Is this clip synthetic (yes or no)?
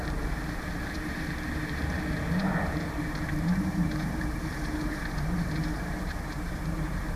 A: yes